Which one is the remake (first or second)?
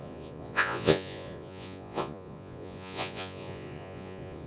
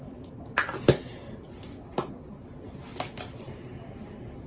first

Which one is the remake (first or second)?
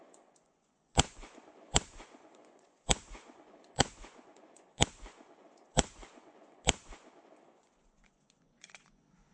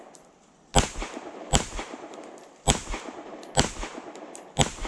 first